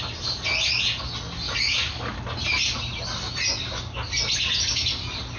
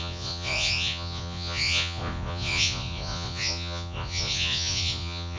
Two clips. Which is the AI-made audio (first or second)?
second